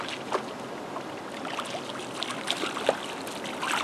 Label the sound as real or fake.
real